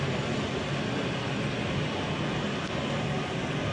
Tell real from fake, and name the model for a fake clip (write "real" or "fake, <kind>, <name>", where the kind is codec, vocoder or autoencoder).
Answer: real